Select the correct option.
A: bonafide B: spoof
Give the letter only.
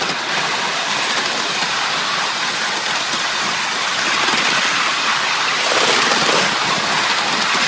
A